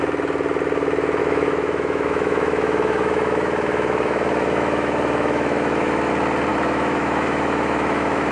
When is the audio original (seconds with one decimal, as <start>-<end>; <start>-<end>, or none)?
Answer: 0.0-1.2; 6.1-6.5

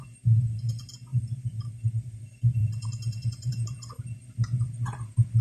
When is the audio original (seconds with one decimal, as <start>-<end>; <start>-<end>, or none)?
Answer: 0.0-1.1; 1.7-2.6; 4.0-5.4

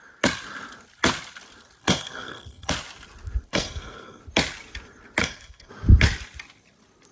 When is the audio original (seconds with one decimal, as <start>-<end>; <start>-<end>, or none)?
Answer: 0.0-1.8; 2.7-3.5; 4.2-5.2; 5.7-7.1

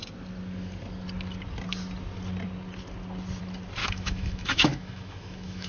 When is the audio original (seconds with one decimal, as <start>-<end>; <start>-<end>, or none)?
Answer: 0.0-3.8

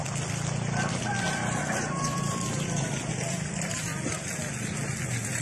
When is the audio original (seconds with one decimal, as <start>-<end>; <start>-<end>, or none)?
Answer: 0.0-5.4

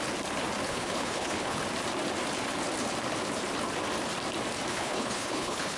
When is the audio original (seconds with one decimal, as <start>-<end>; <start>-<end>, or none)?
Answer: 0.0-0.7; 1.6-4.7